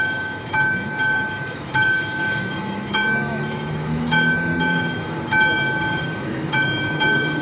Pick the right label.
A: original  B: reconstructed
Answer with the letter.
B